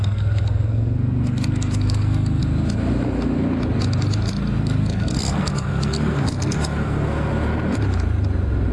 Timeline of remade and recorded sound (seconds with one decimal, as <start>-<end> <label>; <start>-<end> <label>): 0.0-2.4 remade; 2.4-4.6 recorded; 4.6-7.3 remade; 7.3-8.7 recorded